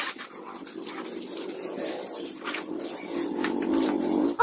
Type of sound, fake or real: real